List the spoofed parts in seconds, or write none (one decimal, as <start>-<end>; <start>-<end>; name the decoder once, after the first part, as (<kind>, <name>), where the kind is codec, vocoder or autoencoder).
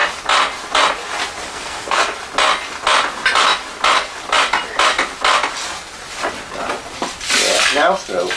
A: 1.5-2.2 (codec, SNAC)